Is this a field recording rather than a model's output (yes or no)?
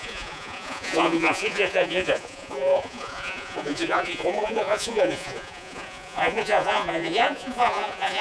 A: no